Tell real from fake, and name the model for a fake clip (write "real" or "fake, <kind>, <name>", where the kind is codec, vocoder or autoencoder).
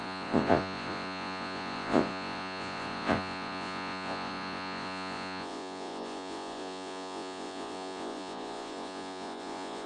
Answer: fake, vocoder, Vocos